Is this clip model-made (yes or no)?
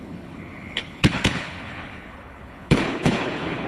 yes